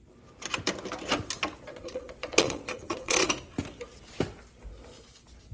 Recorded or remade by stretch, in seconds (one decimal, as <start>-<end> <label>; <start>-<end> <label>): 0.0-1.7 recorded; 1.7-3.3 remade; 3.3-5.5 recorded